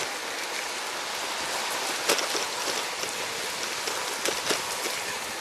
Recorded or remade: recorded